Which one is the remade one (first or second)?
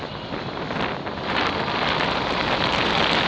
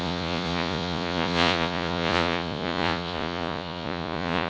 second